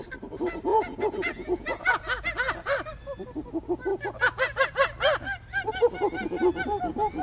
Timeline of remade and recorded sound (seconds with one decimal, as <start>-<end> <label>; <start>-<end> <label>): 0.0-0.7 recorded; 0.7-2.0 remade; 2.0-7.2 recorded